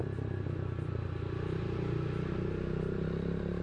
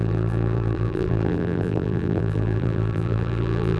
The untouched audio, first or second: first